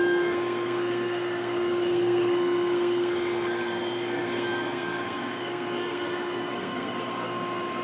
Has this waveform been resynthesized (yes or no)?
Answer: yes